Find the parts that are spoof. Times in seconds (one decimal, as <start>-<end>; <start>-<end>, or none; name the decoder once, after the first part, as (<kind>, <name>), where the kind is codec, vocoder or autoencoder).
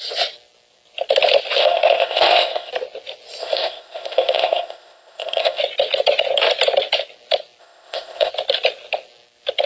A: 1.6-2.7 (codec, ZipCodec); 3.4-5.6; 7.6-8.3